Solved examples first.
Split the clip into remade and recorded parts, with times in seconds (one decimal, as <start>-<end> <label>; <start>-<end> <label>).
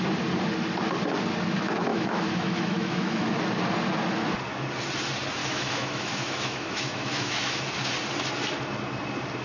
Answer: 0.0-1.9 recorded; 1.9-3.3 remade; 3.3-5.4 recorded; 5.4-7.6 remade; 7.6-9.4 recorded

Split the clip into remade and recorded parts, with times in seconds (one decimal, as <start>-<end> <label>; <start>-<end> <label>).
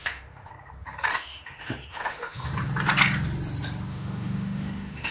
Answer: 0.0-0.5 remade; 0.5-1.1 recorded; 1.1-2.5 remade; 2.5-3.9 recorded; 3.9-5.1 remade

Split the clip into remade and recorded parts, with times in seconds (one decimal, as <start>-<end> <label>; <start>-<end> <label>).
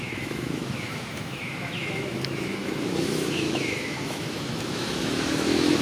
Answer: 0.0-5.8 remade